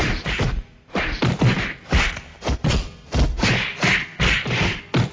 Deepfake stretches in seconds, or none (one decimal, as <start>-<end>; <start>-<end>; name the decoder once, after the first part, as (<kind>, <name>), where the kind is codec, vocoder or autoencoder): none